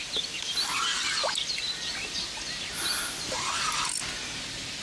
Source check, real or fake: real